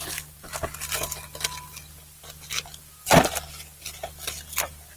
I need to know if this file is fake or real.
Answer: real